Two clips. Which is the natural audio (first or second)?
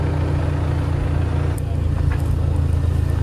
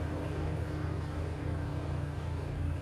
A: first